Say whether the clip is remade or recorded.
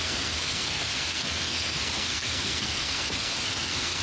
remade